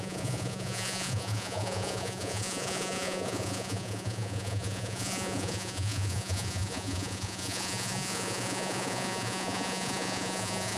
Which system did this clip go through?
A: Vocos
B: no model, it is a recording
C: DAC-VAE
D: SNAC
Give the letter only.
A